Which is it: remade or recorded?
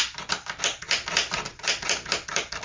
recorded